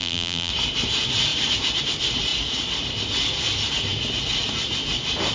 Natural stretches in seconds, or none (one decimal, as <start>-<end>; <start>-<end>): 0.5-5.3